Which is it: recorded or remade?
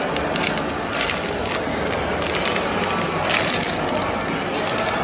recorded